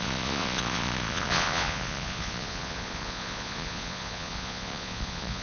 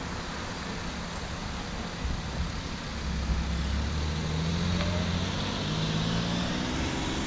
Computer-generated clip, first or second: first